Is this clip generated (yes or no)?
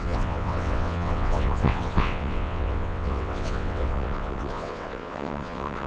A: yes